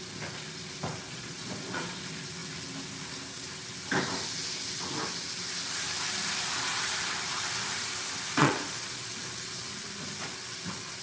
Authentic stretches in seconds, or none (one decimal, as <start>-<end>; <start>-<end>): 0.0-1.1; 2.0-8.4; 9.1-11.0